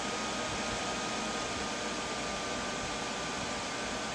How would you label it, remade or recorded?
recorded